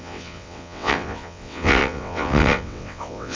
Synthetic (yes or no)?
yes